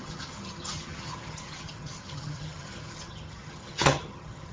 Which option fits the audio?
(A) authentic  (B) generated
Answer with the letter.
B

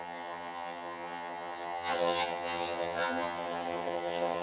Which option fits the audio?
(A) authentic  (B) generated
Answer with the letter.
B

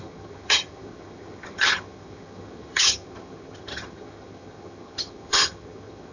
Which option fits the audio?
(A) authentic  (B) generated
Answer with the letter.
B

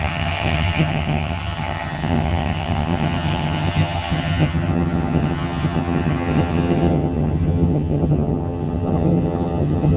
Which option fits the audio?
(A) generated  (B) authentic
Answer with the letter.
A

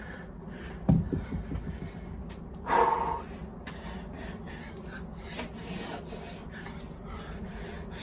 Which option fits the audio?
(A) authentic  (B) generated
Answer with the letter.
A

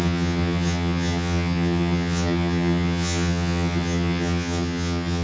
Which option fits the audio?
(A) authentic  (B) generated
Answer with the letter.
B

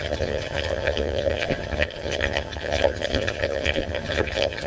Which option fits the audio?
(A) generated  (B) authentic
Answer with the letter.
A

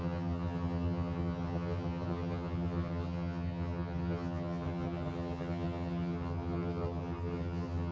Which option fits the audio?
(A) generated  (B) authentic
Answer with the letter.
A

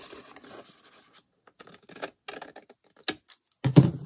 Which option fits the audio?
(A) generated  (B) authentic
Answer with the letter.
B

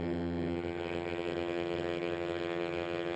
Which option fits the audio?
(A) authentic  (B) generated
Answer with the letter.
B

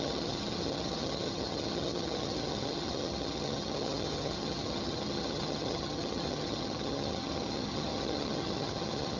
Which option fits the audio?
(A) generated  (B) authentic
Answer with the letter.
A